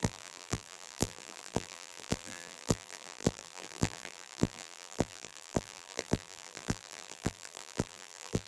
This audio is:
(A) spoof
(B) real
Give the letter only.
A